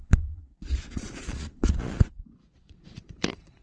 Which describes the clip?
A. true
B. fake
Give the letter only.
B